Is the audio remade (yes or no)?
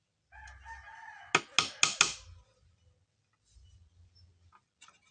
no